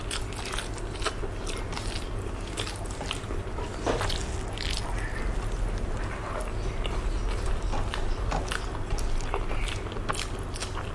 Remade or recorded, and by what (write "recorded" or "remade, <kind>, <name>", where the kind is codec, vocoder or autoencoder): recorded